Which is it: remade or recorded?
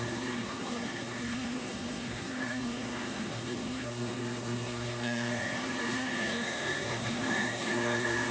remade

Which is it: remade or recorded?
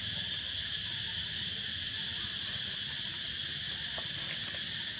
recorded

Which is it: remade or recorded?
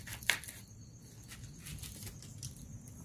recorded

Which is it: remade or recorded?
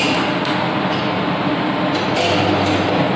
recorded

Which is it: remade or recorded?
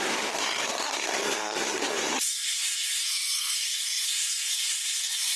remade